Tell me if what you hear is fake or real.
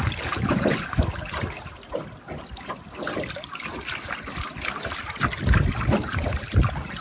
real